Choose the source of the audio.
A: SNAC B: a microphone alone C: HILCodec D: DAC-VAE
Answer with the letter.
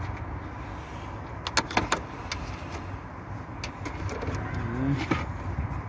B